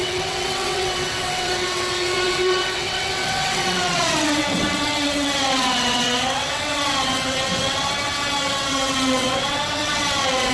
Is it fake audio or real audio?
fake